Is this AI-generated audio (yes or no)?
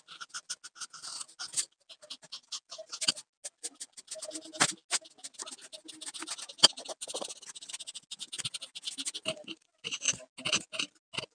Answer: no